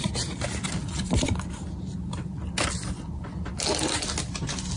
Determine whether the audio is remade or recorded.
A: recorded